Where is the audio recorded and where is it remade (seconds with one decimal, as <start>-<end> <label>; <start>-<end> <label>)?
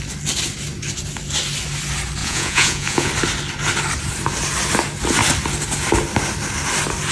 0.0-2.2 recorded; 2.2-3.1 remade; 3.1-7.1 recorded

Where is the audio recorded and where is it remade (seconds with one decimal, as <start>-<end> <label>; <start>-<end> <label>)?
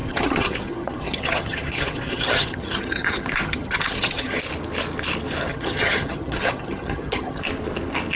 0.0-4.4 remade; 4.4-5.5 recorded; 5.5-7.4 remade; 7.4-8.2 recorded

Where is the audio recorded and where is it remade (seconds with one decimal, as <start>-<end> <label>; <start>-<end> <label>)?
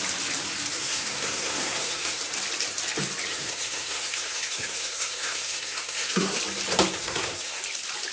0.0-0.7 recorded; 0.7-2.2 remade; 2.2-3.3 recorded; 3.3-6.4 remade; 6.4-7.0 recorded; 7.0-7.6 remade; 7.6-8.1 recorded